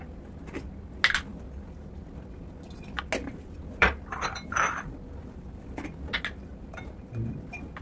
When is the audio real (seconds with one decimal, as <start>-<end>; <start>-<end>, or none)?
0.0-1.3; 2.0-3.6; 5.9-6.5; 7.1-7.8